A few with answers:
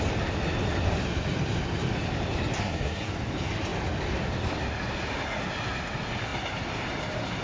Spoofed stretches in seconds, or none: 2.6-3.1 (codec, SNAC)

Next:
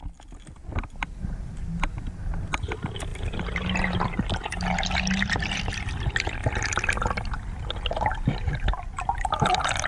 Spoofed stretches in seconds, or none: none

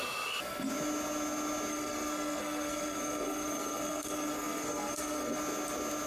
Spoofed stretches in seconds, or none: 1.7-5.4 (codec, SNAC)

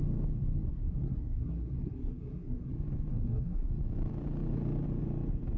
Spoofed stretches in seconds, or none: 0.7-2.7 (codec, SNAC); 3.1-3.7

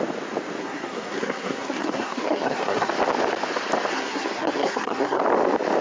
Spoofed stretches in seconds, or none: 0.6-2.9 (codec, SNAC); 3.9-5.2

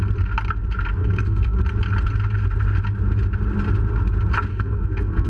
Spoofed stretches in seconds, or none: 1.0-1.6 (codec, SNAC); 4.5-5.3

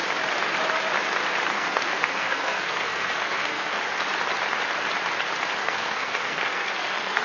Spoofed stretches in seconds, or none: 1.5-3.8 (codec, SNAC); 5.6-7.2

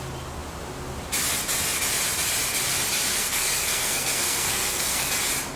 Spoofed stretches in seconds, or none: 3.1-5.1 (codec, SNAC)